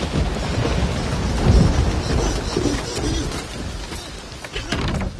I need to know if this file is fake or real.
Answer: real